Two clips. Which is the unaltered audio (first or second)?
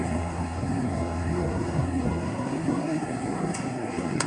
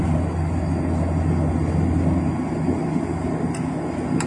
second